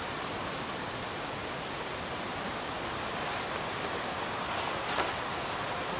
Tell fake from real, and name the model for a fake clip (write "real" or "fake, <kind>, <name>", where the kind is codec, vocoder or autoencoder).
real